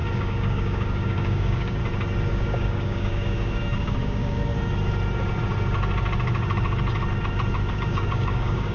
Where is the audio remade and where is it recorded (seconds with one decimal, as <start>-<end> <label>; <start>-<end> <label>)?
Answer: 0.0-1.8 remade; 1.8-2.3 recorded; 2.3-4.5 remade; 4.5-7.7 recorded; 7.7-8.7 remade